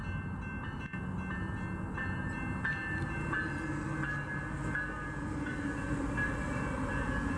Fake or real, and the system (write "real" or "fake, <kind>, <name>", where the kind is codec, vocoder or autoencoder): real